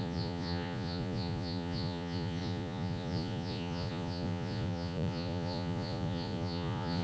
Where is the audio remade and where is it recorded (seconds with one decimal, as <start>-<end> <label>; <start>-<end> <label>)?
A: 0.0-7.0 remade